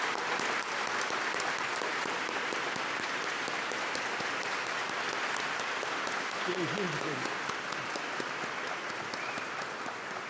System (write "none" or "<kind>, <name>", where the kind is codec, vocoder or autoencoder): none